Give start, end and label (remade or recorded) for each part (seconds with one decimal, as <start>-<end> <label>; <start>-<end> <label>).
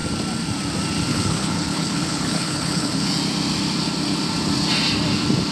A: 0.0-1.1 recorded; 1.1-3.1 remade; 3.1-5.5 recorded